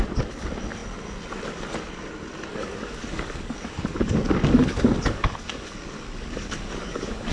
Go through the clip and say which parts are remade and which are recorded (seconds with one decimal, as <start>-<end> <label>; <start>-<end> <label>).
0.0-2.5 recorded; 2.5-7.3 remade